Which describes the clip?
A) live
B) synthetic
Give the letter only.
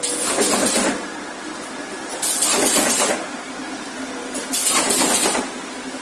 A